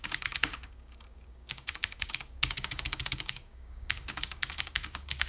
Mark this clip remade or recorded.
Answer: remade